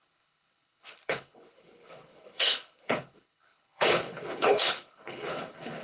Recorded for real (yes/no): no